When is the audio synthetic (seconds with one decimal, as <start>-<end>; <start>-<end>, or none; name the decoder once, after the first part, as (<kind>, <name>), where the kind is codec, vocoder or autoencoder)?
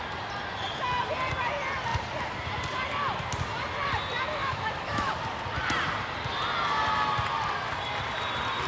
4.4-5.1 (autoencoder, DAC-VAE)